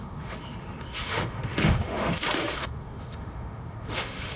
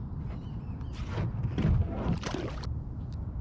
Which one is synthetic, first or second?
first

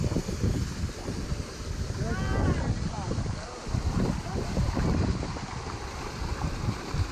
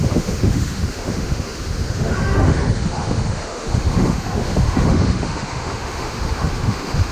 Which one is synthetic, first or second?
second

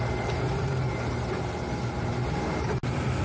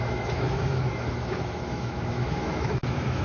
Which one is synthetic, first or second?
second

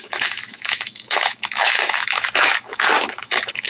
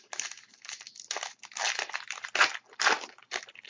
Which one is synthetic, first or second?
first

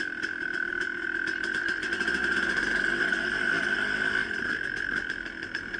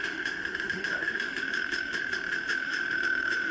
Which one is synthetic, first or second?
second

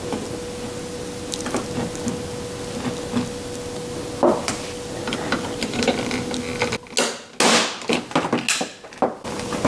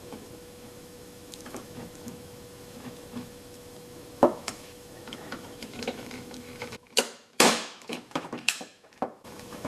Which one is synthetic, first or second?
second